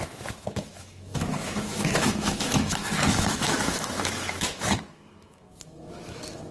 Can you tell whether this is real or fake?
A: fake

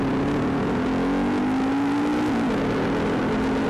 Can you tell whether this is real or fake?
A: real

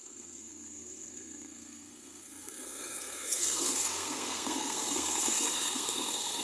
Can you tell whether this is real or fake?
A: fake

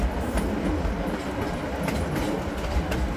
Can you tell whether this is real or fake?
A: real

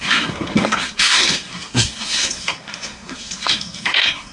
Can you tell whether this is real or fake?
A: fake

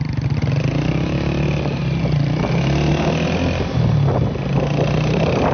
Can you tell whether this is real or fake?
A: real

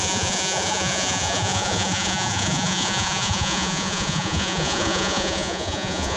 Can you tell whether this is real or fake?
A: fake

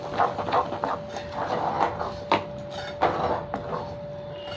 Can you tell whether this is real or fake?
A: real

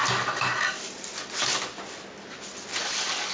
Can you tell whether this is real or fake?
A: real